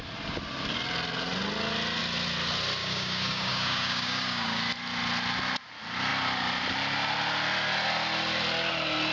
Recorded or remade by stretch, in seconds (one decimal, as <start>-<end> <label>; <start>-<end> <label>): 0.0-2.8 recorded; 2.8-4.6 remade; 4.6-9.1 recorded